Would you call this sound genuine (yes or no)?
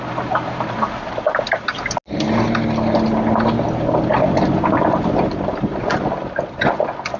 yes